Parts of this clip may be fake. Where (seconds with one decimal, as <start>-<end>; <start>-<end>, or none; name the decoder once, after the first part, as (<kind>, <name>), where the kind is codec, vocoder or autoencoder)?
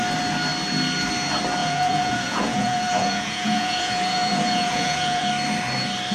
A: 1.6-5.3 (vocoder, Vocos)